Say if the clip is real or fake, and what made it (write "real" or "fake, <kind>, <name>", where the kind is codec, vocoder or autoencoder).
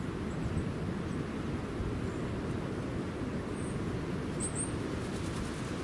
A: real